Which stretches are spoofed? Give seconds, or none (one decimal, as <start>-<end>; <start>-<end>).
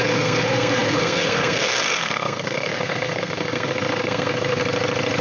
0.0-4.6